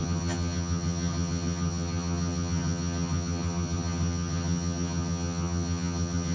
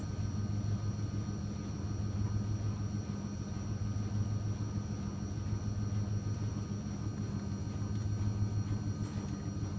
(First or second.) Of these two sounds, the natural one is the second